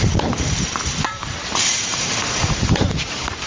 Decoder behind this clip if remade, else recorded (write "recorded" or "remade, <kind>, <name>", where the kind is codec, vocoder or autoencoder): remade, vocoder, BigVGAN v2